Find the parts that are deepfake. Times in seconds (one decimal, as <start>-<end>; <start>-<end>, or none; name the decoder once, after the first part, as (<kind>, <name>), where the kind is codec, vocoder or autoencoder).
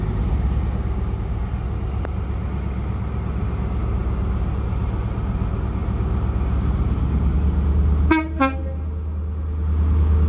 none